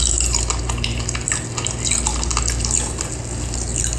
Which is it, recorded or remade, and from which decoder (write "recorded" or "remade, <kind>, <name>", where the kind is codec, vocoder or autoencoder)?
recorded